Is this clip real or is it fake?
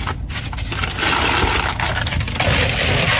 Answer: real